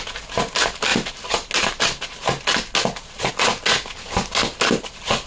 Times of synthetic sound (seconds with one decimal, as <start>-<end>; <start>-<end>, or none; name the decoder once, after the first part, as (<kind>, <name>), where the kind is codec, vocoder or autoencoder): none